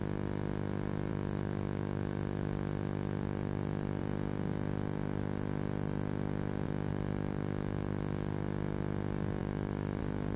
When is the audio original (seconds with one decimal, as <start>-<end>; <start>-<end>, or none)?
0.0-1.1; 4.0-6.9; 8.3-9.4; 10.0-10.4